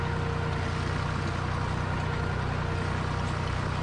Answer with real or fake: real